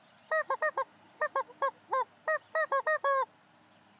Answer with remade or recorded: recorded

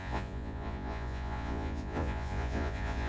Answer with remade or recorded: remade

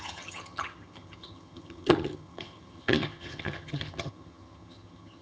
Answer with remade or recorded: remade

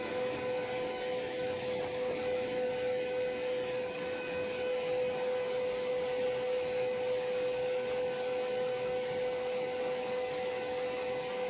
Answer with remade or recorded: remade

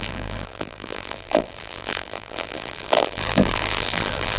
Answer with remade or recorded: remade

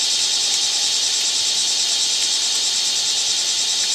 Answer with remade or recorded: recorded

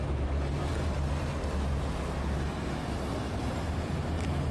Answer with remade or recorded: recorded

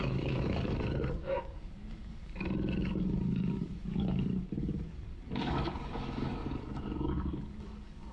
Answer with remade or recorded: remade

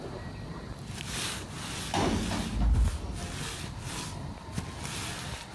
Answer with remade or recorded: recorded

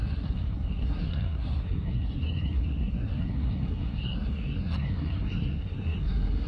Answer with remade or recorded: remade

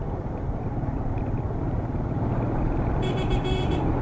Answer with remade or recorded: remade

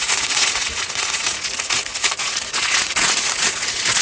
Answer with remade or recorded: remade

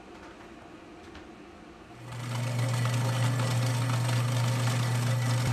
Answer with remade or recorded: recorded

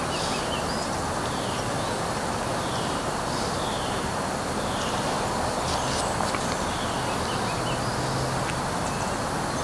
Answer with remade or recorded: recorded